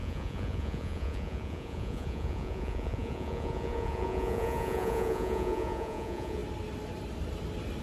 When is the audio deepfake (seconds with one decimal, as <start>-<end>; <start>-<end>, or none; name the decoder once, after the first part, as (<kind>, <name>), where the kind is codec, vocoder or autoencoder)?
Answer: 0.0-6.4 (vocoder, Vocos)